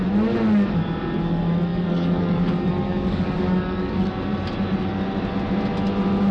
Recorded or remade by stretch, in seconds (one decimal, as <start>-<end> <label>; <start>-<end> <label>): 0.0-1.7 recorded; 1.7-4.1 remade; 4.1-6.3 recorded